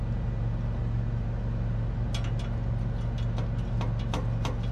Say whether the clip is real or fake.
real